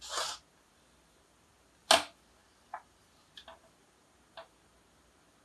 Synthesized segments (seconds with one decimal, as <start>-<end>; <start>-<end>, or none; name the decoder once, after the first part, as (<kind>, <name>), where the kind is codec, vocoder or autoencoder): none